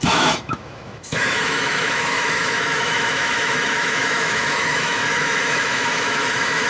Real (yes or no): no